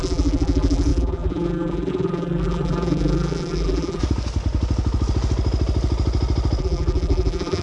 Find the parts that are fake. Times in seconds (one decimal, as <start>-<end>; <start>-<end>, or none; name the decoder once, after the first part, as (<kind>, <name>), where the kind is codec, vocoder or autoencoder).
0.0-4.0 (vocoder, BigVGAN v2); 6.6-7.6